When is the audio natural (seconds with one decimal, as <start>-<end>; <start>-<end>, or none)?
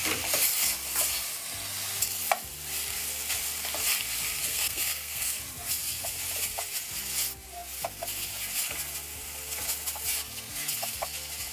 0.0-4.5; 5.4-11.5